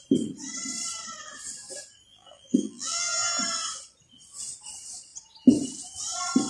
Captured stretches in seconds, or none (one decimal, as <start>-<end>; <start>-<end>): 0.0-2.1; 3.4-6.5